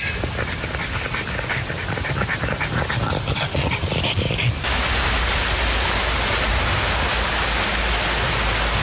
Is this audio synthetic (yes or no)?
no